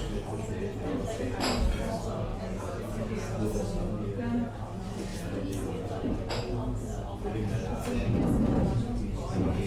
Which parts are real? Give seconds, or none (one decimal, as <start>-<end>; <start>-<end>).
0.0-2.3; 3.4-9.7